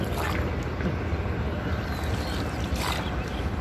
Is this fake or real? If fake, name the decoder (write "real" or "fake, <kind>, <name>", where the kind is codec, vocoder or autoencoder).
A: real